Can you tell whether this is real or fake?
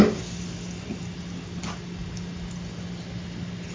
real